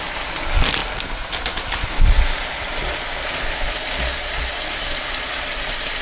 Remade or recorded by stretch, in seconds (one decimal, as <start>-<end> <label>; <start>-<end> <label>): 0.0-6.0 recorded